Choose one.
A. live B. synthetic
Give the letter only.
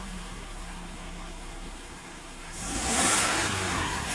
B